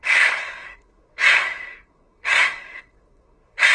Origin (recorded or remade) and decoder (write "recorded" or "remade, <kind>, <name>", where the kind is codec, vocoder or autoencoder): remade, codec, SNAC